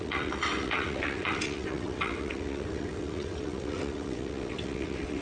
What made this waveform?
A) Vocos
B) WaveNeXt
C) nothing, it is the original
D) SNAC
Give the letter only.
B